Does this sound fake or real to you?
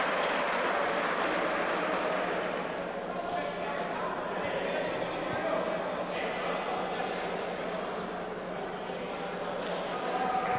real